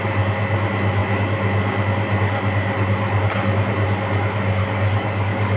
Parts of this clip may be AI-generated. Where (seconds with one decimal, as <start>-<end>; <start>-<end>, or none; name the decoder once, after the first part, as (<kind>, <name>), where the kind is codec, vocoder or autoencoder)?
4.6-5.6 (codec, DAC)